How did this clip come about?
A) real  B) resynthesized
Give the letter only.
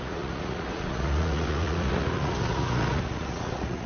B